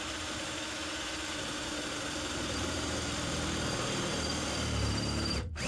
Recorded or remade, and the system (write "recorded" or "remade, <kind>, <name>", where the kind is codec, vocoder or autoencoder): remade, vocoder, BigVGAN v2